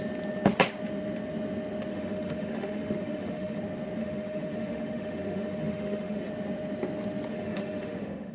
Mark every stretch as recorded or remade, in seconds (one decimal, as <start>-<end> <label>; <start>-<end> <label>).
0.0-1.9 recorded; 1.9-3.6 remade; 3.6-4.0 recorded; 4.0-6.3 remade; 6.3-7.3 recorded; 7.3-8.3 remade